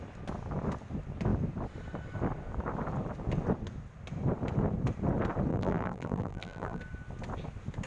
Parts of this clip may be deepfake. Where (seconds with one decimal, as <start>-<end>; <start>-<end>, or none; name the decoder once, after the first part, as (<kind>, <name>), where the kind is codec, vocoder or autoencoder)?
5.5-6.8 (vocoder, BigVGAN v2)